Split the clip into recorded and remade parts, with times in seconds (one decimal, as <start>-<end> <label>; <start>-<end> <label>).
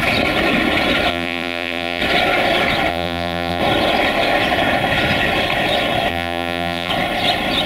0.0-1.1 recorded; 1.1-2.0 remade; 2.0-2.9 recorded; 2.9-3.6 remade; 3.6-6.1 recorded; 6.1-6.9 remade; 6.9-7.7 recorded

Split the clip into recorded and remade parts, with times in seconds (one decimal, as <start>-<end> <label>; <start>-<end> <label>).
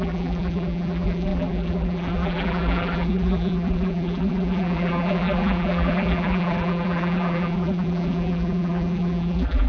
0.0-9.7 remade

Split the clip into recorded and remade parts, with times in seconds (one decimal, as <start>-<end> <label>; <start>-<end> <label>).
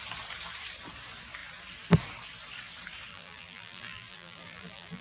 0.0-3.1 recorded; 3.1-5.0 remade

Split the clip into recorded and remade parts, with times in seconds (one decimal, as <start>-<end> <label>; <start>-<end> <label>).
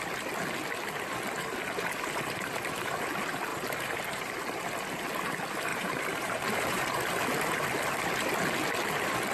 0.0-3.5 recorded; 3.5-4.3 remade; 4.3-5.7 recorded; 5.7-6.8 remade; 6.8-9.3 recorded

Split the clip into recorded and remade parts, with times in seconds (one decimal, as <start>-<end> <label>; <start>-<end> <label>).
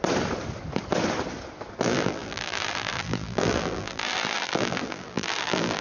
0.0-1.8 recorded; 1.8-5.8 remade